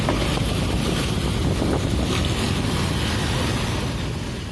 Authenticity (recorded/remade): recorded